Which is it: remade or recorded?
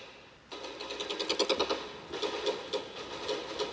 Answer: recorded